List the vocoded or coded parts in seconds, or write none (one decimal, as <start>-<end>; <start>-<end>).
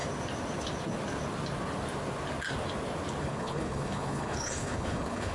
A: 3.2-5.3